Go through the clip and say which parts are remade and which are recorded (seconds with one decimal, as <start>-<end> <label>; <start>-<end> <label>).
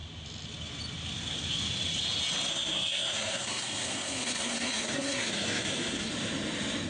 0.0-2.5 recorded; 2.5-6.1 remade; 6.1-6.9 recorded